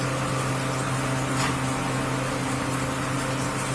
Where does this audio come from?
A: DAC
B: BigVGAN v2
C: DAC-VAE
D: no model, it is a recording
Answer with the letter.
D